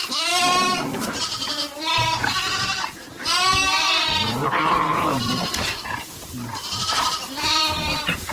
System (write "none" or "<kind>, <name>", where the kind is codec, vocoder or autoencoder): vocoder, BigVGAN v2